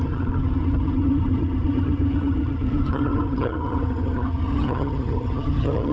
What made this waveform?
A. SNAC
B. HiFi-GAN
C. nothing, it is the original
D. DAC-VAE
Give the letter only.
B